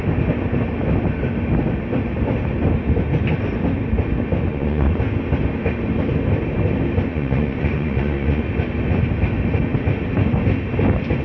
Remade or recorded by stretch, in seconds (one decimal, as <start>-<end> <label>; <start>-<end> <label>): 0.0-4.5 recorded; 4.5-5.0 remade; 5.0-7.1 recorded; 7.1-8.4 remade; 8.4-11.2 recorded